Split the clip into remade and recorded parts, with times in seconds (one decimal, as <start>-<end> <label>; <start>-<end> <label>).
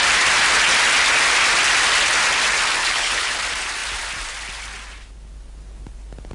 0.0-2.8 recorded; 2.8-3.3 remade; 3.3-6.3 recorded